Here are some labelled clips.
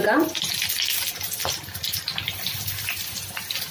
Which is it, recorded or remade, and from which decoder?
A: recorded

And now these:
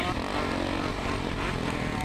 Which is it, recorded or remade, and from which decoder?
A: recorded